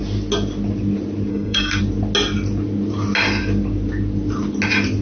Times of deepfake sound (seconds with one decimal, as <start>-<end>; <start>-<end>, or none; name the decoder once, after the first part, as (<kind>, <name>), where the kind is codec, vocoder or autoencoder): 1.3-1.8 (codec, SNAC)